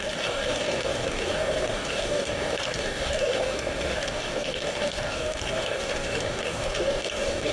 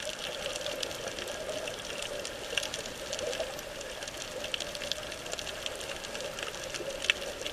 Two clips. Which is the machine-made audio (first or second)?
first